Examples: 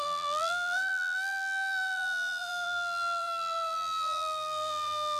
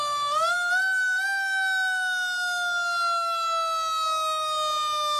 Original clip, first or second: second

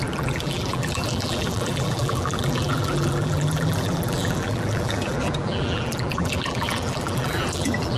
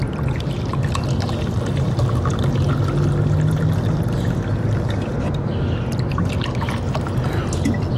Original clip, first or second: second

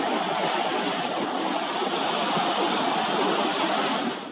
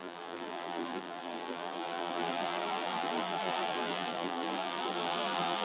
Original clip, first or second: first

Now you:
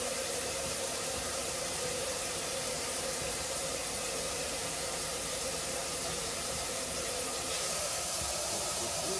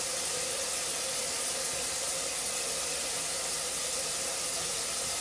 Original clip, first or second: second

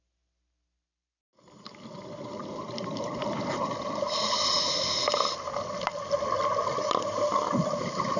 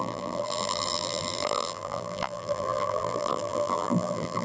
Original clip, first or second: first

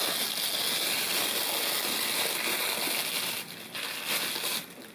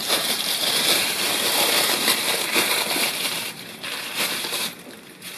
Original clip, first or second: first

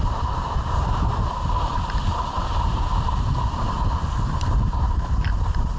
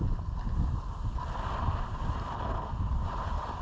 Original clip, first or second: second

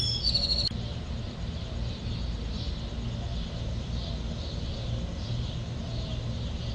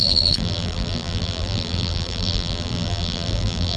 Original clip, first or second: first